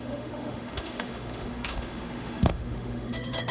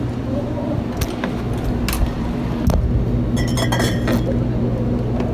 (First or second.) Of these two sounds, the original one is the second